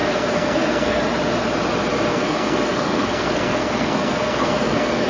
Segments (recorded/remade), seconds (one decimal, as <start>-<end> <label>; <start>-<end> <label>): 0.0-1.0 remade; 1.0-2.1 recorded; 2.1-5.1 remade